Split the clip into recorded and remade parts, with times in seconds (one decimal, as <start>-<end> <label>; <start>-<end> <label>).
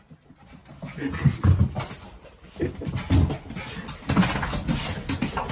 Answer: 0.0-5.5 recorded